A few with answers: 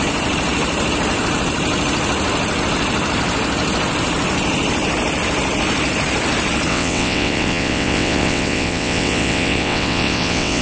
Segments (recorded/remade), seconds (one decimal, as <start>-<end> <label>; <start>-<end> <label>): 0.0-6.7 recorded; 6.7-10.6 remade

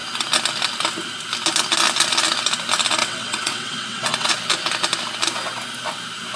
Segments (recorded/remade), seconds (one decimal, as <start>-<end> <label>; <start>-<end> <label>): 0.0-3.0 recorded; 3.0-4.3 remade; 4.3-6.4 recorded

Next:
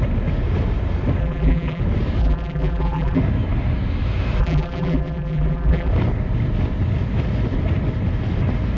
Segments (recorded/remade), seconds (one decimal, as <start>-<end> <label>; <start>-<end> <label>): 0.0-1.2 recorded; 1.2-1.8 remade; 1.8-2.2 recorded; 2.2-3.2 remade; 3.2-4.4 recorded; 4.4-5.9 remade; 5.9-8.8 recorded